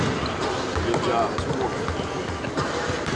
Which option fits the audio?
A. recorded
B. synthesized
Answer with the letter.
A